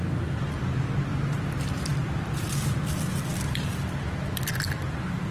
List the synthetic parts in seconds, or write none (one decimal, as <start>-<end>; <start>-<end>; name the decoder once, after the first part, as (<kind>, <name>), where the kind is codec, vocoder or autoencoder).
0.0-1.9 (vocoder, BigVGAN v2)